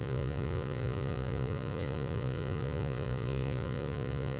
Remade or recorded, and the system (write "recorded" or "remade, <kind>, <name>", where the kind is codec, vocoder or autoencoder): remade, vocoder, Vocos